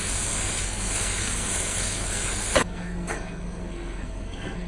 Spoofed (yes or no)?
yes